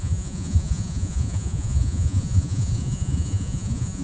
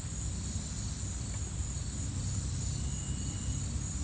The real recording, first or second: second